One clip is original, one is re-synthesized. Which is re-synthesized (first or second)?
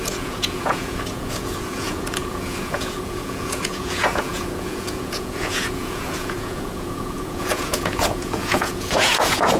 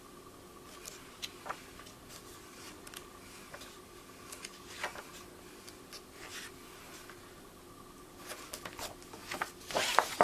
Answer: first